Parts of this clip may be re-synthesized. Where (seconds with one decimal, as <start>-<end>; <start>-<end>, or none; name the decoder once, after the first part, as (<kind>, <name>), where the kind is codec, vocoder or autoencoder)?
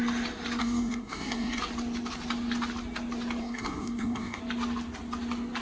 0.6-1.6 (codec, SNAC); 3.4-4.4